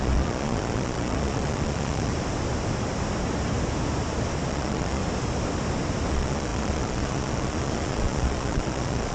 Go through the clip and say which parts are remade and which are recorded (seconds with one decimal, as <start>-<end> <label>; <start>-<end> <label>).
0.0-2.1 remade; 2.1-4.5 recorded; 4.5-5.0 remade; 5.0-6.1 recorded; 6.1-9.1 remade